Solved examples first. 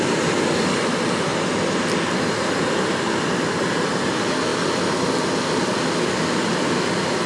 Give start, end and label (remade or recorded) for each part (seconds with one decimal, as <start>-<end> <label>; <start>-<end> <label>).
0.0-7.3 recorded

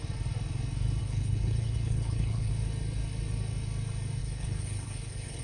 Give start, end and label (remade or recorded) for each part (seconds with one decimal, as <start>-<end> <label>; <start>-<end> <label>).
0.0-1.0 recorded; 1.0-2.5 remade; 2.5-4.2 recorded; 4.2-5.4 remade

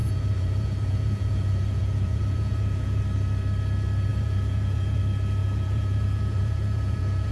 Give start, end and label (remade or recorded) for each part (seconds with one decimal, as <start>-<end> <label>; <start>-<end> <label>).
0.0-3.0 remade; 3.0-4.1 recorded; 4.1-5.0 remade; 5.0-5.4 recorded; 5.4-7.3 remade

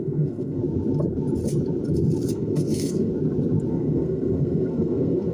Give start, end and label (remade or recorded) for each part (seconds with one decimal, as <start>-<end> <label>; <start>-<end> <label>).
0.0-0.6 remade; 0.6-2.3 recorded; 2.3-3.1 remade; 3.1-3.7 recorded; 3.7-5.3 remade

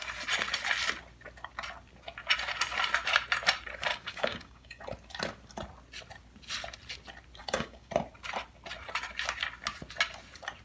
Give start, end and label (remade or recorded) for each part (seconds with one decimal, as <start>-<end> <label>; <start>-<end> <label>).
0.0-3.9 recorded; 3.9-4.8 remade; 4.8-7.4 recorded; 7.4-7.9 remade; 7.9-10.6 recorded

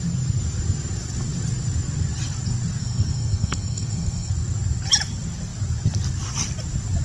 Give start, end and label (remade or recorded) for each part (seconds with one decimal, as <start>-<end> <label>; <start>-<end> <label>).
0.0-2.8 recorded; 2.8-4.3 remade; 4.3-7.0 recorded

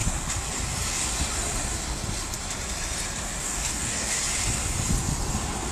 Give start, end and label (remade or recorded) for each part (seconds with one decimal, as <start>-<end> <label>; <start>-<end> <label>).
0.0-3.4 recorded; 3.4-4.2 remade; 4.2-5.7 recorded